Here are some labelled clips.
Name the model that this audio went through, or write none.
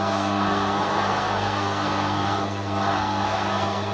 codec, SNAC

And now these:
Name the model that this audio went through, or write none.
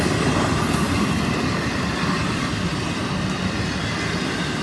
none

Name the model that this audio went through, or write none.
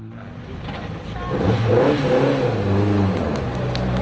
none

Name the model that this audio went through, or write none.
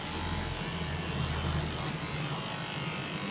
none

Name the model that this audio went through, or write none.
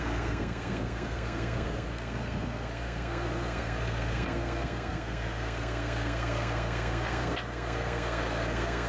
codec, SNAC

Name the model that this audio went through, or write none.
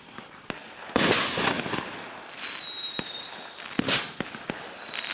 none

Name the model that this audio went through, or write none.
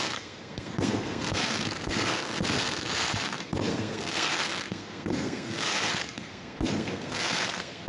codec, SNAC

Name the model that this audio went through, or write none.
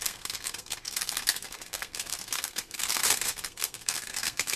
codec, SNAC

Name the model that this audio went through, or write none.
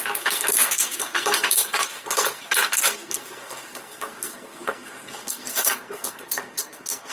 codec, SNAC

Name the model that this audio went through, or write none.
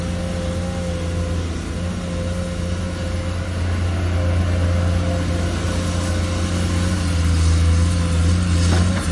none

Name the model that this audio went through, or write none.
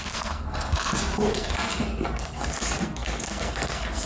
codec, SNAC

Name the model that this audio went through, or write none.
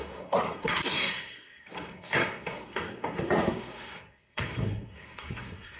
codec, SNAC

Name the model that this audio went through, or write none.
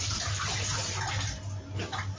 none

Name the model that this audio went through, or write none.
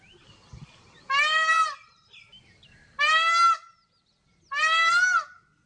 none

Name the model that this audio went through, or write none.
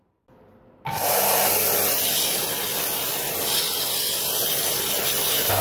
none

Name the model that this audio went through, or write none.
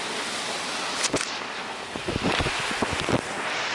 none